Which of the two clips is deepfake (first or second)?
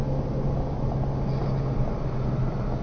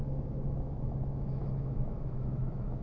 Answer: second